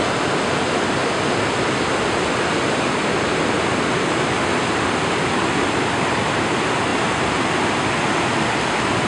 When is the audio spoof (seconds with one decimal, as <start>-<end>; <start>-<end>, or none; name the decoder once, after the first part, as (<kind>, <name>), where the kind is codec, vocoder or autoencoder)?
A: none